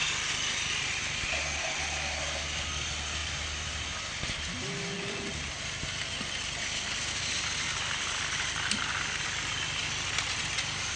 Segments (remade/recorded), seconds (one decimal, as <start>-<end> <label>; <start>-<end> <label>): 0.0-3.2 recorded; 3.2-4.0 remade; 4.0-11.0 recorded